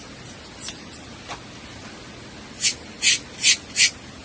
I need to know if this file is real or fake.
real